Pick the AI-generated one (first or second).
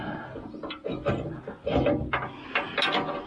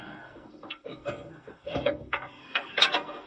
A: second